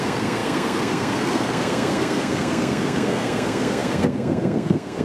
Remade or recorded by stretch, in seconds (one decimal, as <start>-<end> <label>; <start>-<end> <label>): 0.0-5.0 remade